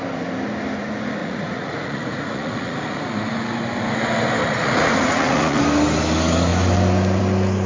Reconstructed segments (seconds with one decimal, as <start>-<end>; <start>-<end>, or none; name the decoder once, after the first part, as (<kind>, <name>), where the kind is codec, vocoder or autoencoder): 1.2-3.0 (vocoder, Vocos); 4.4-5.6